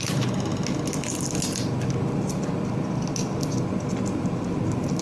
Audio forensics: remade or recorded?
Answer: recorded